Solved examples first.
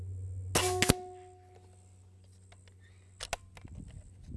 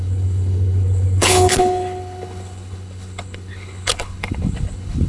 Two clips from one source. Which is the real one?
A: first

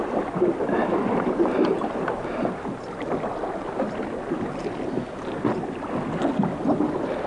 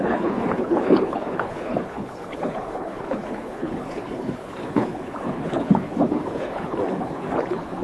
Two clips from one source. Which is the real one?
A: first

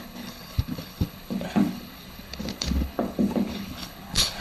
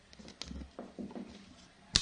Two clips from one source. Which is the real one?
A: second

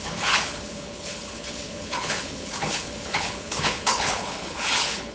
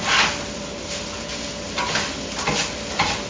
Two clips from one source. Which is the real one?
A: second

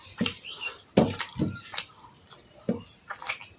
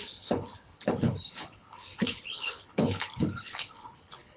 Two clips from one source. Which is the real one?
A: first